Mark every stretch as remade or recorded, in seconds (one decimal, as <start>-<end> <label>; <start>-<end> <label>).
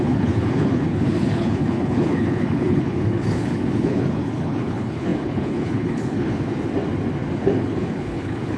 0.0-6.5 remade; 6.5-7.4 recorded; 7.4-8.6 remade